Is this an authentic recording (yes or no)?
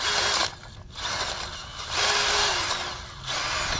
yes